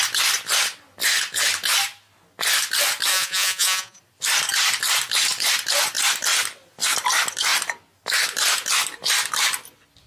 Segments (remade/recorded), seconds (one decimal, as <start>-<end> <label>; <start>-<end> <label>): 0.0-3.1 recorded; 3.1-4.0 remade; 4.0-10.1 recorded